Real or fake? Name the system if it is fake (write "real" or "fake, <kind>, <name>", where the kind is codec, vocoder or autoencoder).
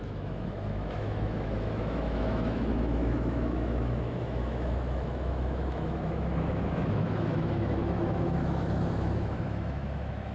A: fake, autoencoder, DAC-VAE